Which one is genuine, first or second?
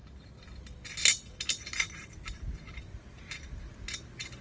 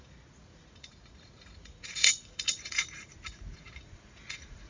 first